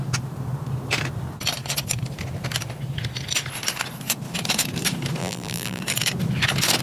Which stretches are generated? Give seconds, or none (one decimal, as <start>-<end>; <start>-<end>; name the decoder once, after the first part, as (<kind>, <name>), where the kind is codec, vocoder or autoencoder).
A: 5.2-5.8 (vocoder, BigVGAN v2)